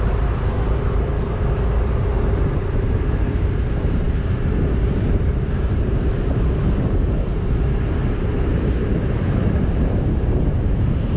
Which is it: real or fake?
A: fake